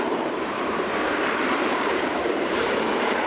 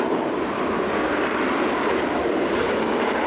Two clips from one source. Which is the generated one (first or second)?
first